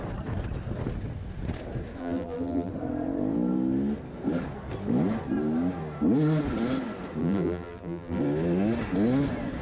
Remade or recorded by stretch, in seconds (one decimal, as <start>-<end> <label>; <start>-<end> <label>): 0.0-2.0 recorded; 2.0-2.7 remade; 2.7-7.2 recorded; 7.2-8.2 remade; 8.2-9.6 recorded